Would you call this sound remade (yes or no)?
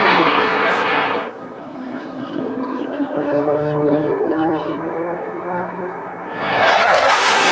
yes